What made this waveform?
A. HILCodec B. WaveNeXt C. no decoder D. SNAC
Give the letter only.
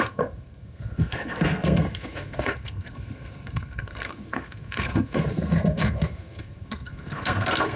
D